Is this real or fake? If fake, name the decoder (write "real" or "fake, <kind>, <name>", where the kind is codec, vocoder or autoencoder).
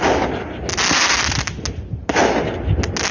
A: real